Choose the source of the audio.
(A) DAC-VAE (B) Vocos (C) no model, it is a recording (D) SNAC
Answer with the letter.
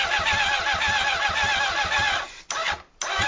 C